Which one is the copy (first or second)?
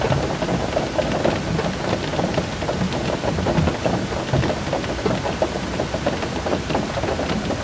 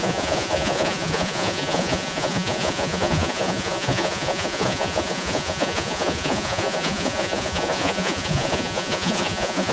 second